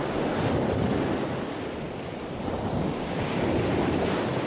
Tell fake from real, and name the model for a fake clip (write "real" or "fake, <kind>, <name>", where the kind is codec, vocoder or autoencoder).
real